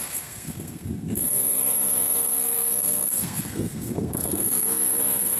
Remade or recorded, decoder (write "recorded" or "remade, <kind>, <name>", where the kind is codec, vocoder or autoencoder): remade, codec, SNAC